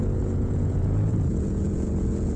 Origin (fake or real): fake